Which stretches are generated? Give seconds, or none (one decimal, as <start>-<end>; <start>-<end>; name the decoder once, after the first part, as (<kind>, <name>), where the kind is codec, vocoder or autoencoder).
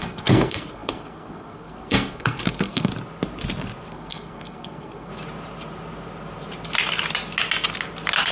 0.0-2.9 (codec, SNAC); 3.9-5.1